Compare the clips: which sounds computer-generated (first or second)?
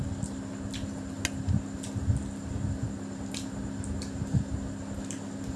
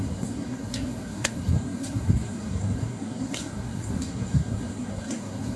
second